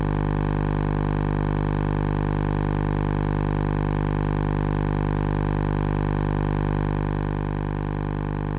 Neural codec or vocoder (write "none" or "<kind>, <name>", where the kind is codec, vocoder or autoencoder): none